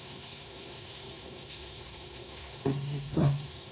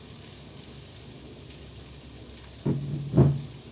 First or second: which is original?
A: second